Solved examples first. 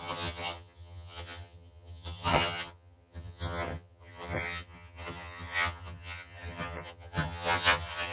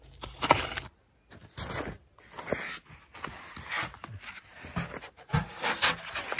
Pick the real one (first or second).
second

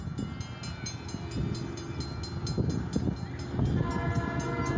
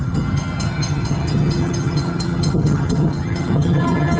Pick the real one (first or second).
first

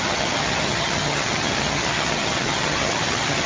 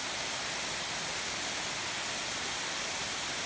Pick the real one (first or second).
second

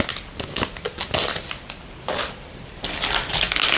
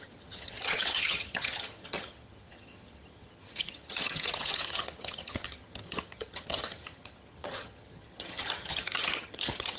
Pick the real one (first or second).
first